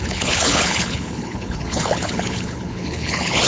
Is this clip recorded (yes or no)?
no